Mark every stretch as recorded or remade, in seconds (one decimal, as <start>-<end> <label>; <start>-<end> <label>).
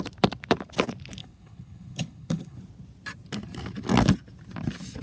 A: 0.0-1.2 recorded; 1.2-2.6 remade; 2.6-5.0 recorded